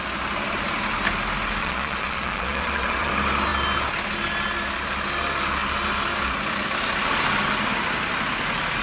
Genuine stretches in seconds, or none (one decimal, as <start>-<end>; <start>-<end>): 0.0-1.6; 3.1-8.8